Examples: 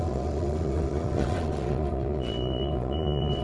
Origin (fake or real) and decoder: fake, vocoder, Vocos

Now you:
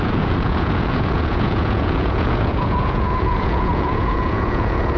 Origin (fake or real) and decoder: fake, vocoder, Vocos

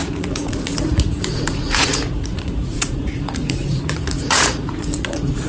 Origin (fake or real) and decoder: fake, vocoder, Vocos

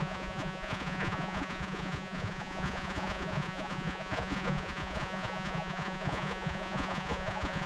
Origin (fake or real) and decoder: fake, vocoder, Vocos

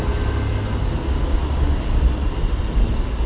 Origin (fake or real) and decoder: real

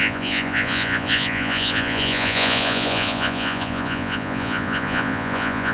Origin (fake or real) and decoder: fake, vocoder, Vocos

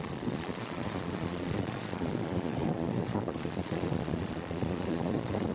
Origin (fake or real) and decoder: fake, vocoder, Vocos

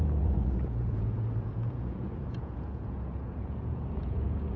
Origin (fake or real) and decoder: fake, vocoder, Vocos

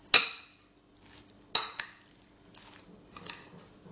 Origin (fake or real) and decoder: real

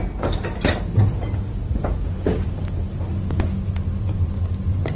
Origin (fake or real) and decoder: real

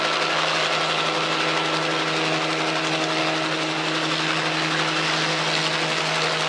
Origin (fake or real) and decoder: real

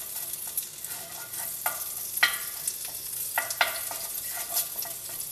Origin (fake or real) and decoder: real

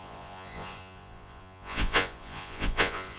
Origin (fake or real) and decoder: fake, vocoder, Vocos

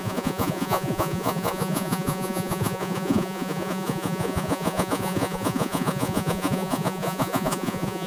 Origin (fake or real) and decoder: fake, vocoder, Vocos